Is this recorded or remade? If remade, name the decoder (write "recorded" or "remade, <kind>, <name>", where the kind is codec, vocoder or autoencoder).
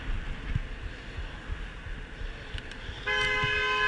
recorded